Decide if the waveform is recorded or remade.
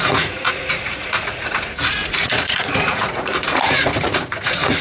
remade